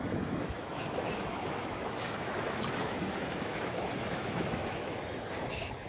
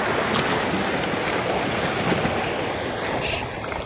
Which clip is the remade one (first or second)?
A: first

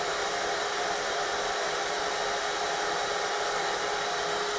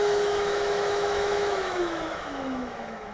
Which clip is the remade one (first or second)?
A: second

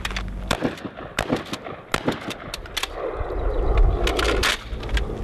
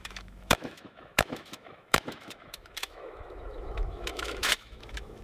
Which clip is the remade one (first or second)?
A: second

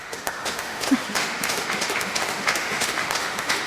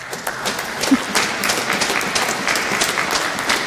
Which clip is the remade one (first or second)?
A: first